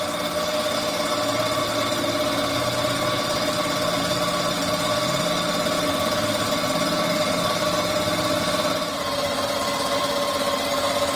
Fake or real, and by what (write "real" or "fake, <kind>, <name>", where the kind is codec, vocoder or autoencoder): real